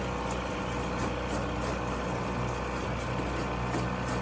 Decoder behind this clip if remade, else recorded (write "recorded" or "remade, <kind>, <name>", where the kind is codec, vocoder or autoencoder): recorded